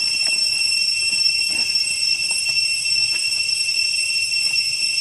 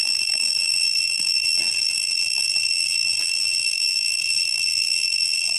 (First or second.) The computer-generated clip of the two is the second